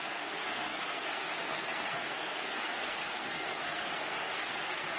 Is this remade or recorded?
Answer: remade